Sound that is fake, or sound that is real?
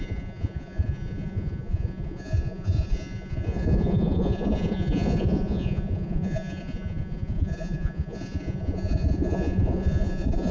fake